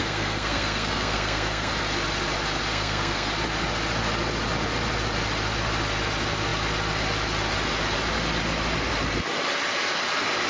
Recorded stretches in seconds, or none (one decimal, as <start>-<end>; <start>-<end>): 1.7-2.7; 3.3-10.5